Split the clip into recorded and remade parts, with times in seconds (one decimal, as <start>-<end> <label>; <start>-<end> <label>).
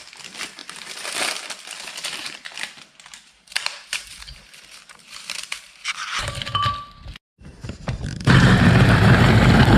0.0-0.6 recorded; 0.6-1.1 remade; 1.1-2.2 recorded; 2.2-6.7 remade; 6.7-7.3 recorded; 7.3-9.2 remade; 9.2-9.8 recorded